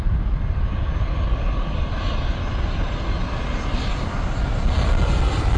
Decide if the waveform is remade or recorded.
recorded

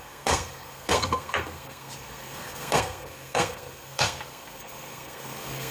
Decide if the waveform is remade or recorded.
remade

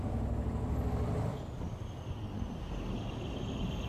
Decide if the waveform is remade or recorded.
recorded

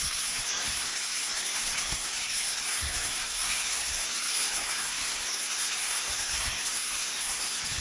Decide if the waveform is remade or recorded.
remade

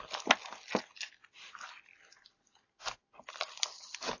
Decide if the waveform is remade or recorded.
recorded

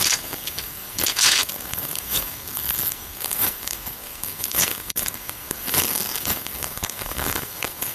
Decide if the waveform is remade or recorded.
remade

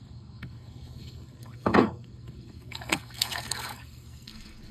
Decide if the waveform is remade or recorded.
remade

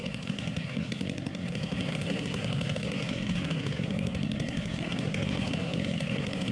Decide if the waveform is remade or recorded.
remade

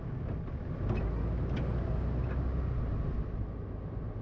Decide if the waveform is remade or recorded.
recorded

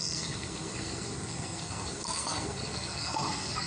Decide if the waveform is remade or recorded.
remade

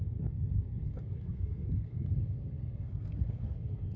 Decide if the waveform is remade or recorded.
remade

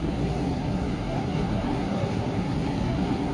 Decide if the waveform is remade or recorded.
remade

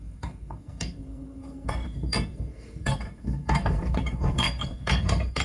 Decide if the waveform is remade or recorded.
remade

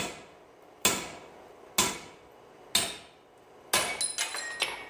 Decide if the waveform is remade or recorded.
recorded